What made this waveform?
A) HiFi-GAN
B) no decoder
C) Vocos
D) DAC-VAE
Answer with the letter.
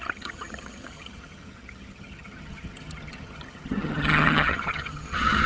A